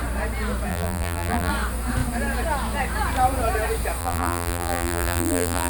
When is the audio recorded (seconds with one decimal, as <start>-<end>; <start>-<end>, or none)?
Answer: 0.0-0.7; 1.5-4.0

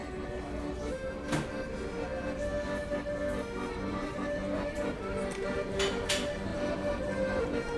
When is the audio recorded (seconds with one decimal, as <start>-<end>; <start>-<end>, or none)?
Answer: 0.0-4.1